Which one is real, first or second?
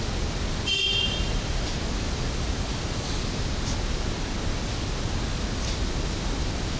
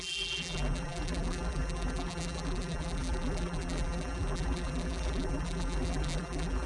first